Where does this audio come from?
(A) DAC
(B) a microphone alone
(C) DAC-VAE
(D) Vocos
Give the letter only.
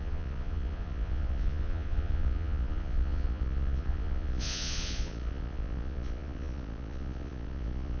D